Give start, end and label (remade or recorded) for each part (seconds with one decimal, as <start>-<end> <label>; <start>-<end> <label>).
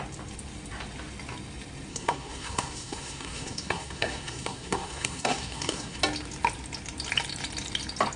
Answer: 0.0-1.9 recorded; 1.9-6.0 remade; 6.0-8.2 recorded